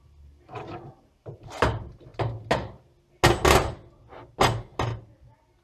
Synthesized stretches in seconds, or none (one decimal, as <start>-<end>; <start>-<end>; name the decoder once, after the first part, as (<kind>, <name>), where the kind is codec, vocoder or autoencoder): none